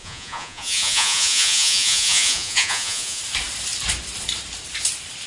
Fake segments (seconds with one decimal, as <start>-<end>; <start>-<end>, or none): 0.0-3.2